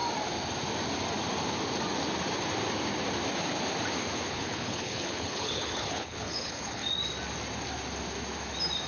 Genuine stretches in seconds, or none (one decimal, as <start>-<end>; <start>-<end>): 0.0-4.3; 6.8-8.9